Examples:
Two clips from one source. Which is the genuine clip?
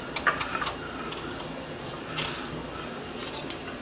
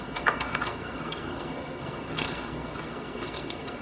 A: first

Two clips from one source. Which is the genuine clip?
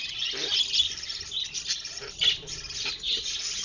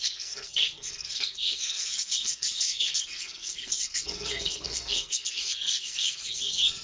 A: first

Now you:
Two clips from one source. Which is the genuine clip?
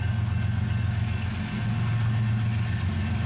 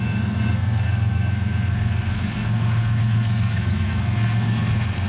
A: first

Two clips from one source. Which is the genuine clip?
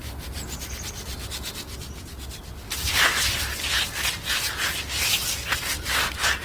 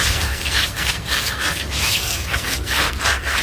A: first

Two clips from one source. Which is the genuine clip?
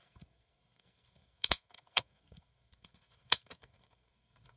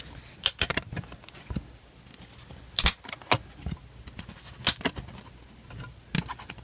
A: second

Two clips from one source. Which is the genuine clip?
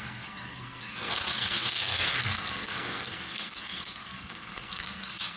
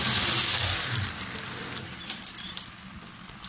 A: second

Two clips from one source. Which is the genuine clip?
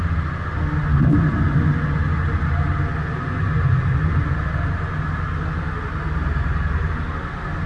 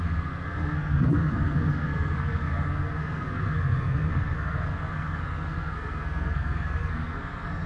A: first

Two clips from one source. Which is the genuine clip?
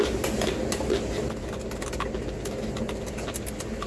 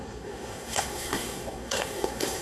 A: first